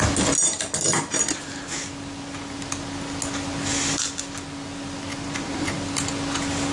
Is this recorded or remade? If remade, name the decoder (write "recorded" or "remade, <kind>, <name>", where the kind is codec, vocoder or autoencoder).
recorded